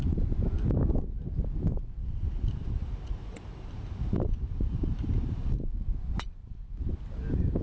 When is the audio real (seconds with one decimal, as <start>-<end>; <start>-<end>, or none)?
0.0-2.0; 5.5-7.6